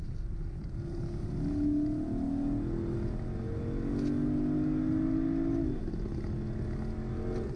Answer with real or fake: real